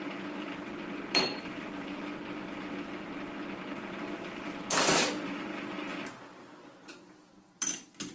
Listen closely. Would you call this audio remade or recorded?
remade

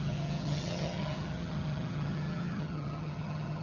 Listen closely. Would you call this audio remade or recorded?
remade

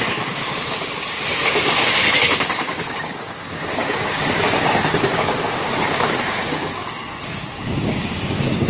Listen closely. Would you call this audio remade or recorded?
remade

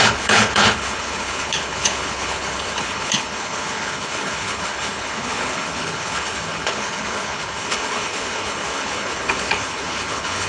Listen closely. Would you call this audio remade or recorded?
remade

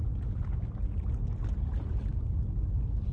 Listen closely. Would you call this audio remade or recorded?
recorded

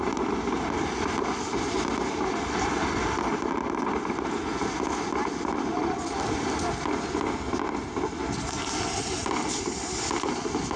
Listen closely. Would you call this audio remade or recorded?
recorded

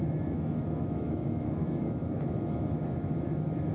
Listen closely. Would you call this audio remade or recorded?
remade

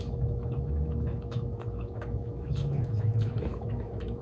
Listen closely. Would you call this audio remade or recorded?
remade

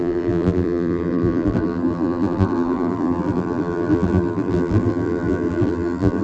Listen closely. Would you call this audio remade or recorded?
remade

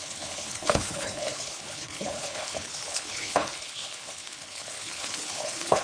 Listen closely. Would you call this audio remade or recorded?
remade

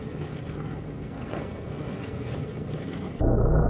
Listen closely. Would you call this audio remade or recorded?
remade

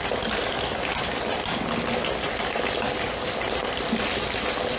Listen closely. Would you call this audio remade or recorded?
recorded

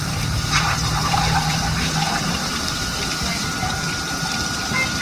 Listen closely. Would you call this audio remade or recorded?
remade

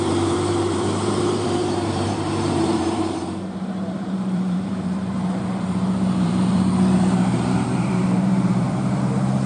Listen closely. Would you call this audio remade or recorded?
remade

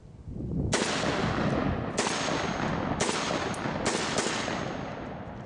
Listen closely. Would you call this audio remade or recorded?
recorded